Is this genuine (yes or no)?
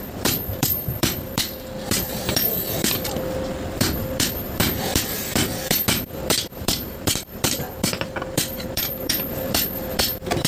no